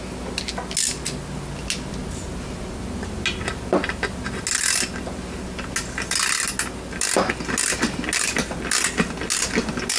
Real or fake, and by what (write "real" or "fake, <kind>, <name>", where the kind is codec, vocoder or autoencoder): real